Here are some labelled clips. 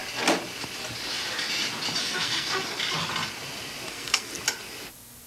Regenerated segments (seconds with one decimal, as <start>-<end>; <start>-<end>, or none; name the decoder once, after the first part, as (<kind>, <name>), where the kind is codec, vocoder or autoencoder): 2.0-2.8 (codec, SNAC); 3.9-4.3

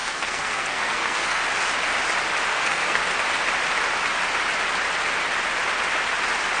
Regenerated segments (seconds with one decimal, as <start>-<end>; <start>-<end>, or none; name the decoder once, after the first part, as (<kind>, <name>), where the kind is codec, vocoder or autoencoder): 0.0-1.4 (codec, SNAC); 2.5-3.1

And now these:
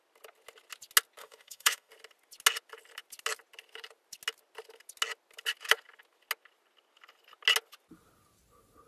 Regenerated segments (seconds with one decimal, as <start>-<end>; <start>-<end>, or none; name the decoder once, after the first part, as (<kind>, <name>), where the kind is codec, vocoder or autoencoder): 1.2-1.9 (autoencoder, DAC-VAE)

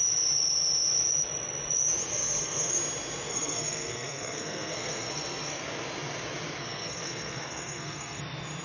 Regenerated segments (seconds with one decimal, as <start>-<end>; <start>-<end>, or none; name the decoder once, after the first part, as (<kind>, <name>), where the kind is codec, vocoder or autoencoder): 2.1-2.7 (codec, SNAC); 3.3-5.6; 6.6-8.2

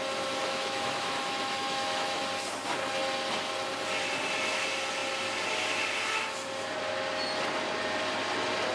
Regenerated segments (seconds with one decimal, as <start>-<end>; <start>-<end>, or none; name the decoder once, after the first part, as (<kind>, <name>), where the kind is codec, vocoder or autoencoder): 0.4-2.2 (autoencoder, DAC-VAE)